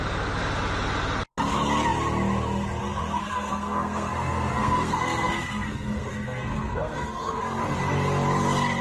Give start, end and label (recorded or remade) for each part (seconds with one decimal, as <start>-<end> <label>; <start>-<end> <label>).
0.0-3.2 recorded; 3.2-7.4 remade; 7.4-8.8 recorded